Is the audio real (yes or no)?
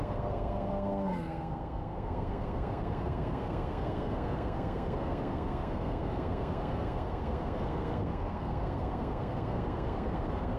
no